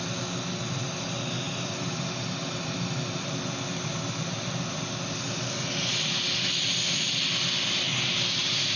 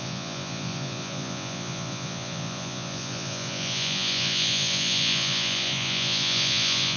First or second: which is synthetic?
second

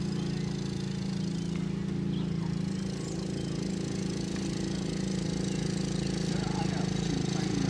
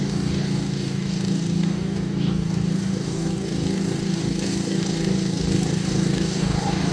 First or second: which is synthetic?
second